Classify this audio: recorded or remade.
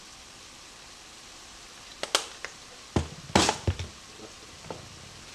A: recorded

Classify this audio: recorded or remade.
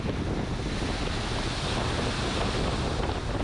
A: recorded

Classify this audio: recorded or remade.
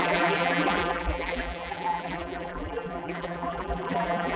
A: remade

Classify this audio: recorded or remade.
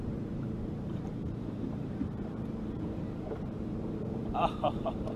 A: remade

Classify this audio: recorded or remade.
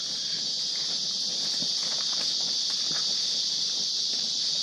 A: recorded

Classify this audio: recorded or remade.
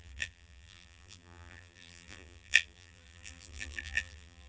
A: remade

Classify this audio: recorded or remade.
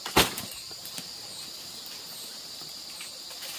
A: recorded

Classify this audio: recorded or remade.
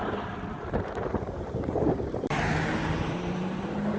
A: remade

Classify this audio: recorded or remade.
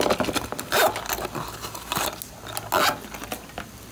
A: recorded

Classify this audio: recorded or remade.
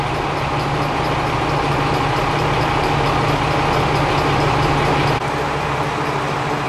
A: recorded